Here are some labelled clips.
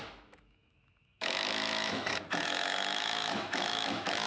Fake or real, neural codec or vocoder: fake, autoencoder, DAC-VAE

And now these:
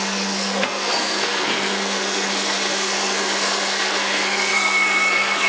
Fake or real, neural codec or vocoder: fake, codec, SNAC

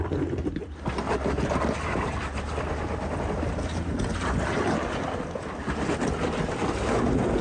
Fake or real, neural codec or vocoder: real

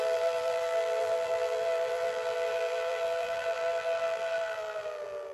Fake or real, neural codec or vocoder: fake, vocoder, BigVGAN v2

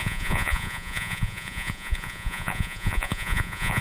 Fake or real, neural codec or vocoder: fake, vocoder, Vocos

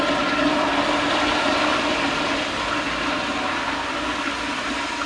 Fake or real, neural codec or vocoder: real